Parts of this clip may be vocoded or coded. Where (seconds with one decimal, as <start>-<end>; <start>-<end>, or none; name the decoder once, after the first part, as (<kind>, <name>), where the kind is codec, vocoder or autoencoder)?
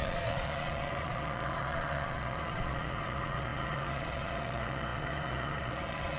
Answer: 0.0-6.2 (vocoder, Vocos)